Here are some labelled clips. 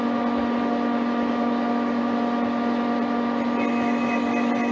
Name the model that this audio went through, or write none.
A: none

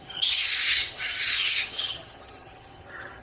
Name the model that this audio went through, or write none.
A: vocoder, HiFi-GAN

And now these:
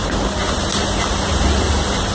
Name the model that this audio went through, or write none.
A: none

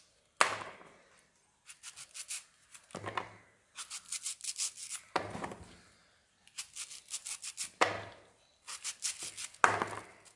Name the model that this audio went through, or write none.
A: none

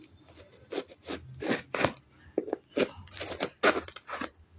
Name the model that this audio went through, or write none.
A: none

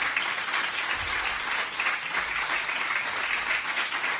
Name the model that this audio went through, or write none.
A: none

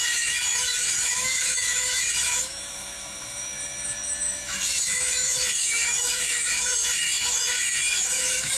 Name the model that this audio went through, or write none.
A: autoencoder, DAC-VAE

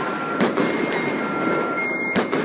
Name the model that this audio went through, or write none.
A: none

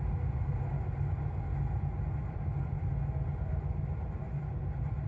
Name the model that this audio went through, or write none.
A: none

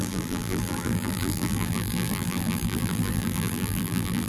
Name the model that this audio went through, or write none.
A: vocoder, BigVGAN v2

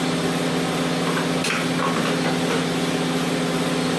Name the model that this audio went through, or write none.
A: none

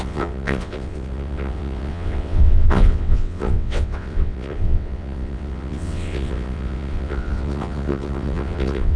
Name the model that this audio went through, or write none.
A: vocoder, WaveNeXt